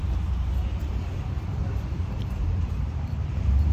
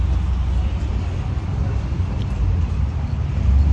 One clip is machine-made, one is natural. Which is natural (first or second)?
second